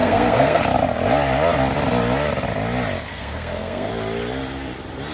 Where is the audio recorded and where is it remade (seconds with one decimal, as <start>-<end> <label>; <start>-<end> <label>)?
0.0-0.6 remade; 0.6-3.1 recorded; 3.1-3.9 remade; 3.9-5.1 recorded